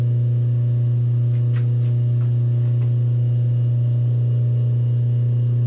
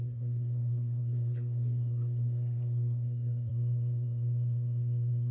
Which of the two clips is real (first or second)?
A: first